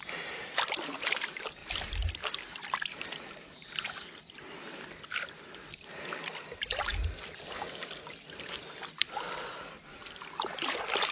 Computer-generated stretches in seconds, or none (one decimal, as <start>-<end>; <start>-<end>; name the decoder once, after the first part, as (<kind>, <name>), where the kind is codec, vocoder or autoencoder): none